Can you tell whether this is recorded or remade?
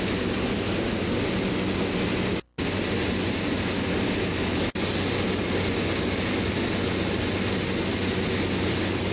recorded